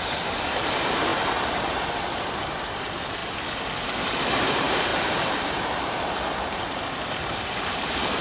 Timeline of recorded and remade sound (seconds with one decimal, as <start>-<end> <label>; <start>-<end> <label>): 0.0-1.1 remade; 1.1-1.9 recorded; 1.9-3.2 remade; 3.2-4.2 recorded; 4.2-8.2 remade